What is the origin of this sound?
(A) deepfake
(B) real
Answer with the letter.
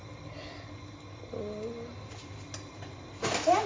B